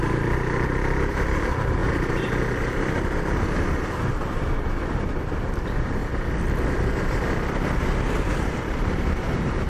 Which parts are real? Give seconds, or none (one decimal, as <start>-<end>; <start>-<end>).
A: 6.0-8.2

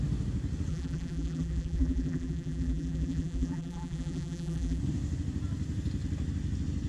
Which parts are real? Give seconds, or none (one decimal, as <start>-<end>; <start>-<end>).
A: 0.0-0.7; 4.8-6.9

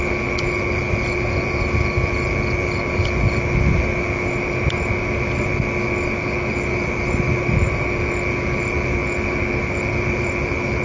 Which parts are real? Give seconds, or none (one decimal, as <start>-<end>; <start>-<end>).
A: 0.0-10.8

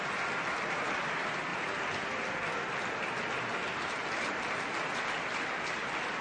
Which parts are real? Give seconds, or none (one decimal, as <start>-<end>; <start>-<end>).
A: 0.0-6.2

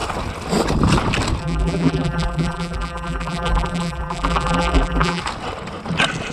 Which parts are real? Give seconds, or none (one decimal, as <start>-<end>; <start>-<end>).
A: 0.0-1.4; 5.2-6.3

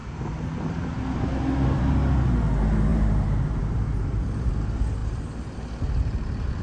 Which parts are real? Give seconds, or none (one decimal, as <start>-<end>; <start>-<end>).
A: 0.0-2.9; 4.5-5.0